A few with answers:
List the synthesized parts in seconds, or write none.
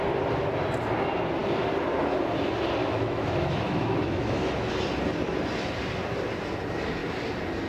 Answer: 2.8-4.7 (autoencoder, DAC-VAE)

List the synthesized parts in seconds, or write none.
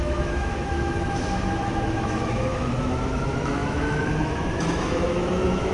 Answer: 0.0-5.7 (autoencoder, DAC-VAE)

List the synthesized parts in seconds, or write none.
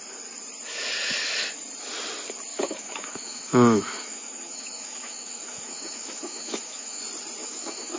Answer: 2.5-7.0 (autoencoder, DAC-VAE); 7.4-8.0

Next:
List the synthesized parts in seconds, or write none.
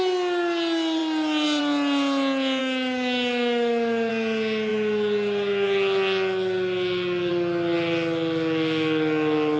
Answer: 2.6-4.1 (autoencoder, DAC-VAE)